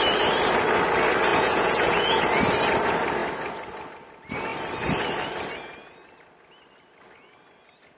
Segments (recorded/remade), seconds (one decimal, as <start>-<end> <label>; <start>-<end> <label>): 0.0-1.3 recorded; 1.3-2.2 remade; 2.2-8.0 recorded